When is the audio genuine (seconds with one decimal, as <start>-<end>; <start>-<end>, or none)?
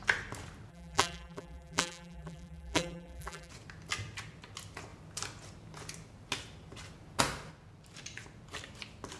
0.0-0.7; 3.5-9.2